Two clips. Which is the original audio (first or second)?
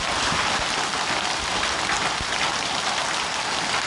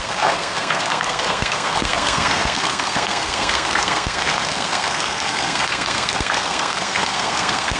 first